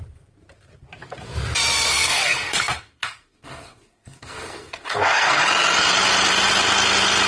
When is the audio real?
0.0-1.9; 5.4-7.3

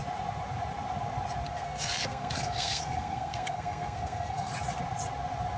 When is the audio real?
0.0-1.5; 4.5-5.6

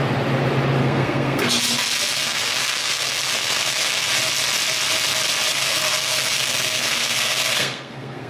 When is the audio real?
0.0-0.8; 1.5-2.1; 4.1-5.5

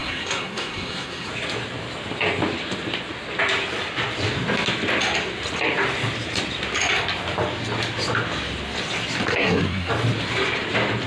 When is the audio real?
1.3-9.3; 9.9-11.1